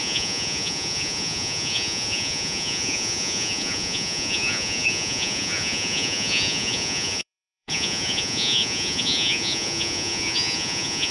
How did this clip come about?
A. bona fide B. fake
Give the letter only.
B